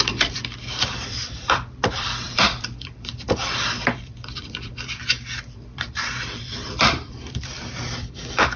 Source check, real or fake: fake